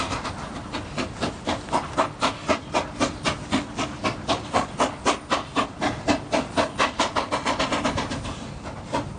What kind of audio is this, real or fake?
real